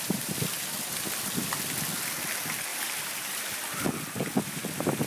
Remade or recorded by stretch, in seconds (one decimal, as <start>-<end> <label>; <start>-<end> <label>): 0.0-2.7 recorded; 2.7-3.4 remade; 3.4-5.1 recorded